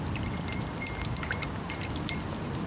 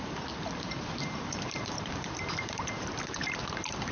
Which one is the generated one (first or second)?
second